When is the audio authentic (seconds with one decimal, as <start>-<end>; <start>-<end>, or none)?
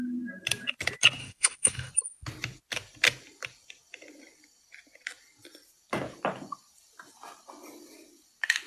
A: 0.0-1.2; 1.9-8.7